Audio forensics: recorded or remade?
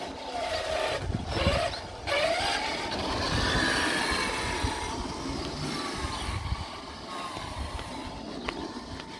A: recorded